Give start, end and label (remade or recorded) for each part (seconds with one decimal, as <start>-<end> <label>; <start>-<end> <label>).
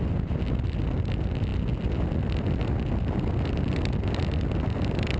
0.0-5.2 recorded